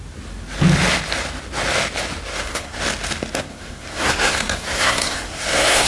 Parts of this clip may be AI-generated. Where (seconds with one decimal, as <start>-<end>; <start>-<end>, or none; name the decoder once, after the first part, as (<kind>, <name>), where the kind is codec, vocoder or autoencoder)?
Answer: 2.3-2.8 (codec, SNAC); 3.5-5.9